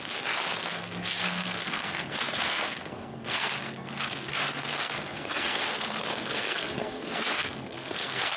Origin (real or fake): fake